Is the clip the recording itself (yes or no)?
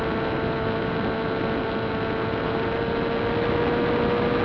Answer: yes